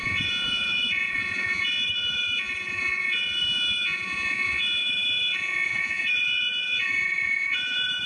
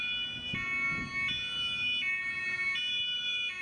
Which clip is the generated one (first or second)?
first